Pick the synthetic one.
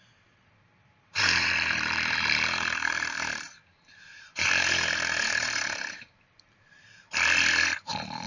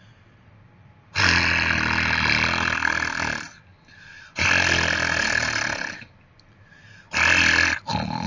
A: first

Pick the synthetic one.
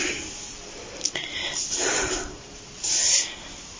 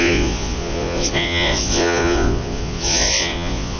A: second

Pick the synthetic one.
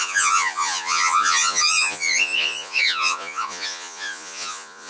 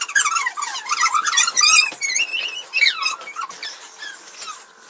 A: first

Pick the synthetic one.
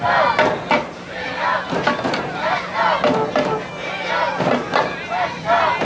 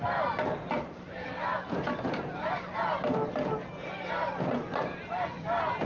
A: second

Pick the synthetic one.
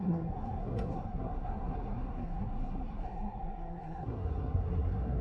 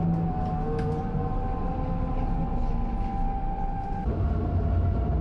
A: first